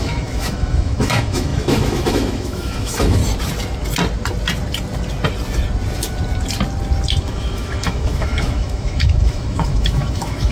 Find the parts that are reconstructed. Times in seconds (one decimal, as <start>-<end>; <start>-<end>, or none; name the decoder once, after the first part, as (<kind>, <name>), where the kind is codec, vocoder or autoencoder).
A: 0.0-3.2 (autoencoder, DAC-VAE); 7.2-10.5